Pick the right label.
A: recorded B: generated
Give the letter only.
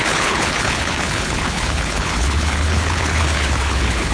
B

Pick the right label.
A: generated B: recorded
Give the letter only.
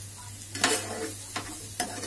B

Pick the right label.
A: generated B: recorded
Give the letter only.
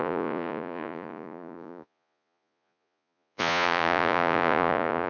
A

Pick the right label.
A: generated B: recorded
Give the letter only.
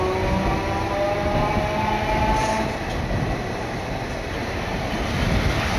B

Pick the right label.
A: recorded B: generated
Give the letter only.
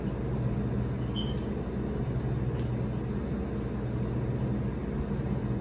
A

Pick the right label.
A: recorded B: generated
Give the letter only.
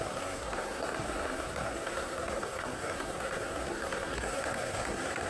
B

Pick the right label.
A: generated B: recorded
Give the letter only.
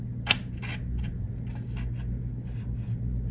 B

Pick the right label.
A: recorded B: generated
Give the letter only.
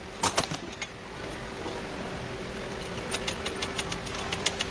A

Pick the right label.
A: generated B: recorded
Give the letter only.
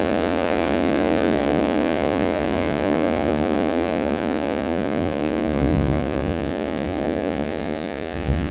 A